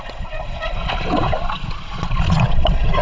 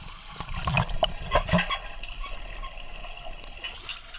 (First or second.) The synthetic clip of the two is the first